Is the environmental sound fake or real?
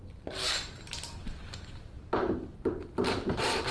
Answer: real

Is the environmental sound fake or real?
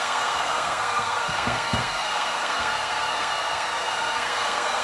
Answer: fake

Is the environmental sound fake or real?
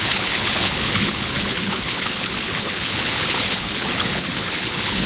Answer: fake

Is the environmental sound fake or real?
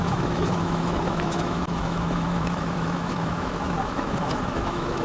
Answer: fake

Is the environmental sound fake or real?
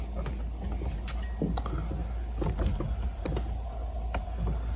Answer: real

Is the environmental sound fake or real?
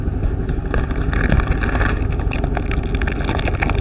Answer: real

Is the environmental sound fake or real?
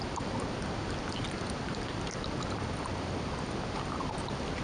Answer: real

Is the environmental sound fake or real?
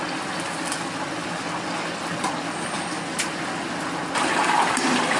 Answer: real